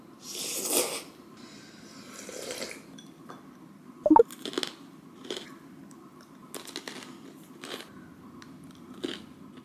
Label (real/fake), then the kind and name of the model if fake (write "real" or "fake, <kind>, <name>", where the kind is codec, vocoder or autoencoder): real